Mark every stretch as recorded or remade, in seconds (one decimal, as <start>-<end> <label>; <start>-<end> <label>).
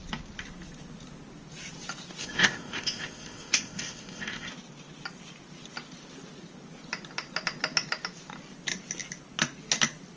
0.0-2.2 recorded; 2.2-4.5 remade; 4.5-10.2 recorded